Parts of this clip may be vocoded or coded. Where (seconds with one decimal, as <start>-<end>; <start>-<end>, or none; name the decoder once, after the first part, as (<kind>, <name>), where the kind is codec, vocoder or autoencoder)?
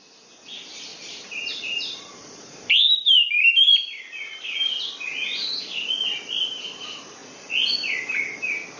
0.9-4.0 (vocoder, BigVGAN v2)